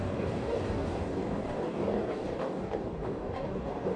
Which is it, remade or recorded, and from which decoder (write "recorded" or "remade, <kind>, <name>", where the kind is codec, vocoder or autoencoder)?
remade, codec, DAC